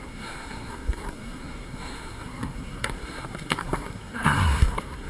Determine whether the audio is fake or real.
fake